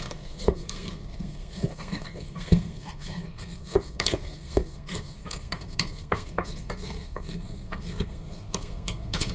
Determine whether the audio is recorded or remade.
remade